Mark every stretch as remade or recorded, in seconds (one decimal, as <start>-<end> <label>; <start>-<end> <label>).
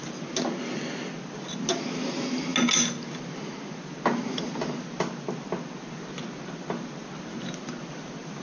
0.0-8.4 recorded